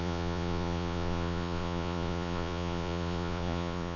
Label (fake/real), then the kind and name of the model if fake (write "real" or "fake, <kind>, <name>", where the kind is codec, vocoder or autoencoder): fake, vocoder, Vocos